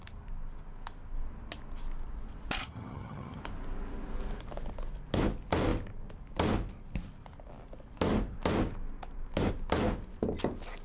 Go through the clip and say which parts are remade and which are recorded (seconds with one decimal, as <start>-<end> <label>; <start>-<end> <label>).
0.0-2.6 recorded; 2.6-3.4 remade; 3.4-10.8 recorded